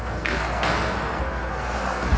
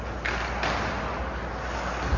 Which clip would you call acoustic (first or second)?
second